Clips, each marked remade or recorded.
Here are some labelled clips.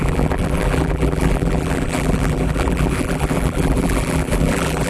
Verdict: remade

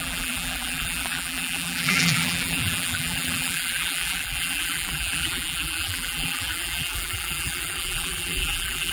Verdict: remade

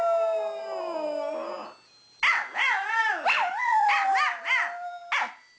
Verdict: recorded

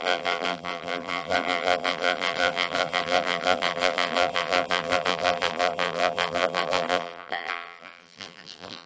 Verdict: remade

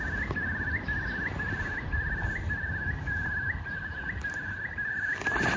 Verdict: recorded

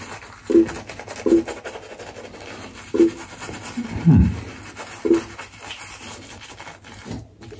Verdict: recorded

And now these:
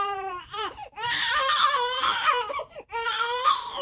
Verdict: remade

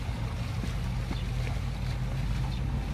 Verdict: recorded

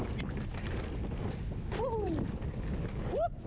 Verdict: recorded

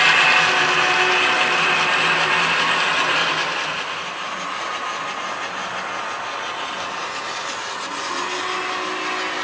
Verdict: recorded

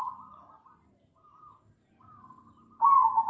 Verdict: recorded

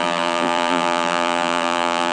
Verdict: remade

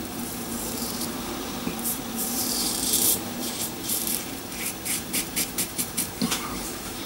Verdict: remade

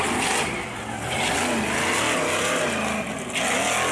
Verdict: recorded